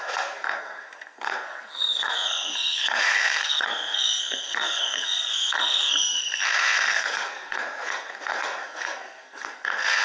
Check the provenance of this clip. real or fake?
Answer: fake